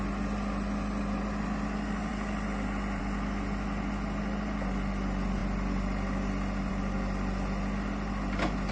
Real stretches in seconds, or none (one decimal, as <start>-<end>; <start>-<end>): 0.0-8.7